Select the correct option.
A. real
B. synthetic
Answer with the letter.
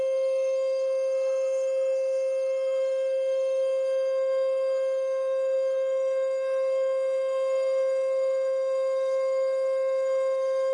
B